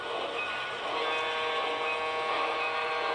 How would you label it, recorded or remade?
recorded